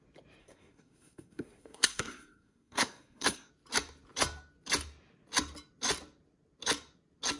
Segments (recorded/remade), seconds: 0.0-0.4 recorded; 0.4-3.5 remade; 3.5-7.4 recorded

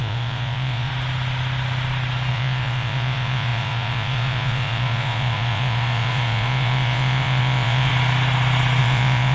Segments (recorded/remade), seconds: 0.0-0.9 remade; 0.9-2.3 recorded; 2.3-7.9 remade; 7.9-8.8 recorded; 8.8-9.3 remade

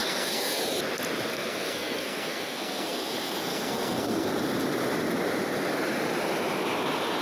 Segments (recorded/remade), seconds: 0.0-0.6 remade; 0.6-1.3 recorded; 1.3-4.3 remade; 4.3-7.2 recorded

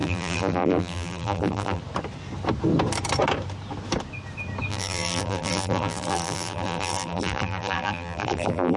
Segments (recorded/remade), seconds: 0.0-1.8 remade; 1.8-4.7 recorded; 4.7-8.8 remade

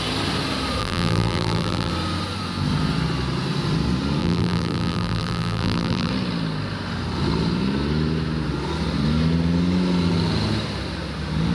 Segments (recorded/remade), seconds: 0.0-0.8 recorded; 0.8-1.9 remade; 1.9-4.2 recorded; 4.2-6.1 remade; 6.1-11.5 recorded

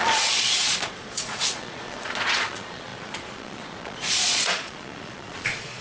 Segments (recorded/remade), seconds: 0.0-5.8 remade

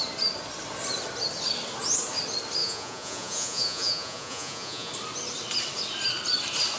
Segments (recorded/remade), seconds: 0.0-2.6 recorded; 2.6-4.9 remade; 4.9-6.8 recorded

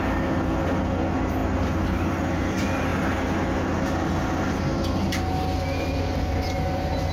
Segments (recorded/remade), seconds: 0.0-7.1 recorded